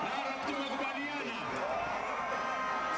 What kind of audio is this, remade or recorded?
recorded